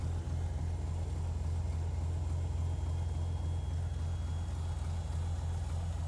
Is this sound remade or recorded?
recorded